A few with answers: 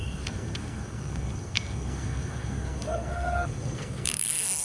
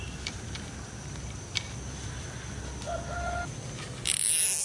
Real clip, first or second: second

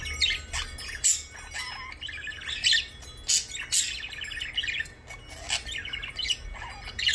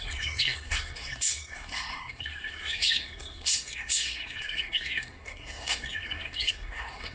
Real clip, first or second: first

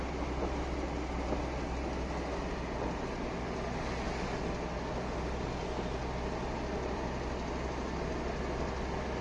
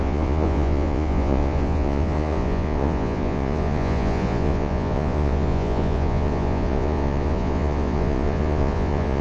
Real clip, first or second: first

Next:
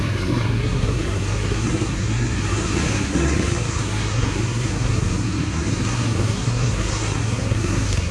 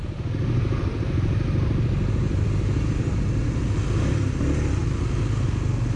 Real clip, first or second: second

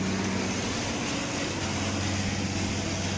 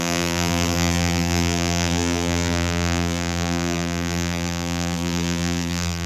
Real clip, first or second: first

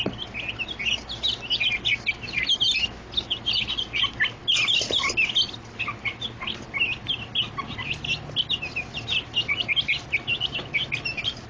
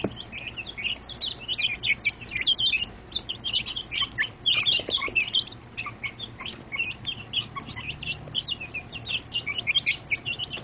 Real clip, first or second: first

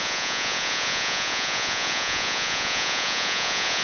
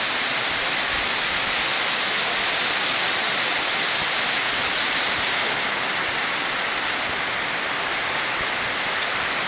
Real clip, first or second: second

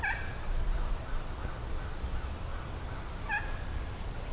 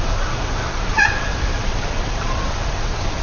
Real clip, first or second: first